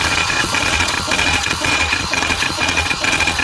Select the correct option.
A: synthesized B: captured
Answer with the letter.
A